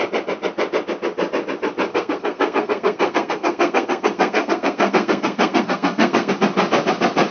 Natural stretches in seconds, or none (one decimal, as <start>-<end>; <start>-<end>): 0.0-1.9; 6.3-7.3